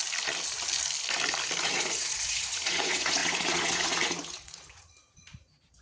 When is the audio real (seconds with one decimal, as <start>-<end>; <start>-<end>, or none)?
0.0-1.6